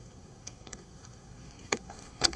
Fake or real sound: fake